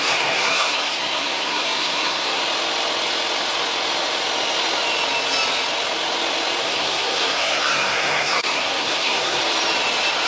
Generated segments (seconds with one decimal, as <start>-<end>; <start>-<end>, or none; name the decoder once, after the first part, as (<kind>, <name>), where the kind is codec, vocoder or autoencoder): 0.0-2.4 (codec, SNAC); 6.6-9.4